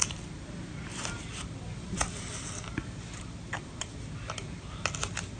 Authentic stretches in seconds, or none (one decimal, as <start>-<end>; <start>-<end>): 0.0-0.9; 1.9-5.4